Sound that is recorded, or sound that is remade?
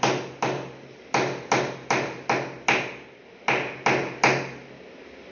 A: recorded